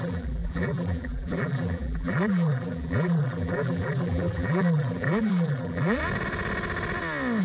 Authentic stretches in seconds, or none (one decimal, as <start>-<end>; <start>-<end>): 6.0-7.4